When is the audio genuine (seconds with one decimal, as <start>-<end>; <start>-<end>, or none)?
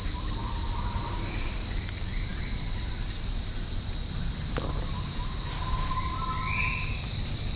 0.0-7.6